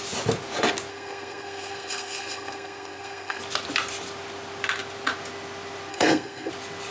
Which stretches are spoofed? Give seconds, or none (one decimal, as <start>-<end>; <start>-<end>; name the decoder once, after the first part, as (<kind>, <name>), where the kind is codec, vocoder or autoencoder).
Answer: 0.9-3.4 (codec, SNAC); 5.9-6.5